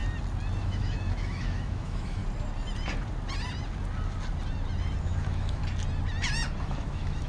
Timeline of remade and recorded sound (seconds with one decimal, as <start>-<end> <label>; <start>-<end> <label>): 0.0-0.6 recorded; 0.6-2.2 remade; 2.2-5.0 recorded; 5.0-5.6 remade; 5.6-6.6 recorded; 6.6-7.3 remade